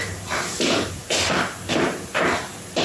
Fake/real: fake